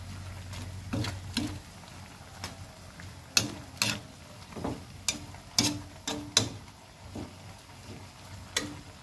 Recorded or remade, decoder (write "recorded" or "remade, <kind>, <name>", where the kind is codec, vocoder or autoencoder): recorded